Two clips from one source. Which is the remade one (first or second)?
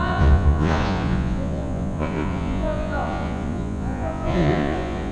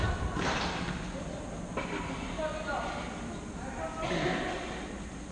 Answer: first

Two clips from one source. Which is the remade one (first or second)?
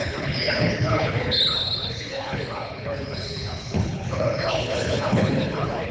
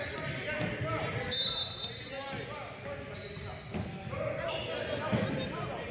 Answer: first